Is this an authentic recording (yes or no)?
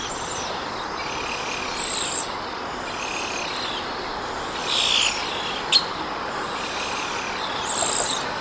yes